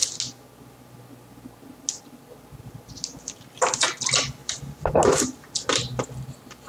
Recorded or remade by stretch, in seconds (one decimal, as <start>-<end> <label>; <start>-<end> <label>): 0.0-6.7 recorded